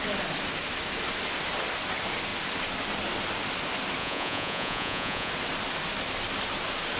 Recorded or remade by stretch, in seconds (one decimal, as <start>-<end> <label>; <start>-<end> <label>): 0.0-4.0 recorded; 4.0-5.3 remade; 5.3-7.0 recorded